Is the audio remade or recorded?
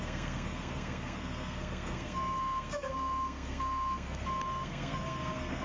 remade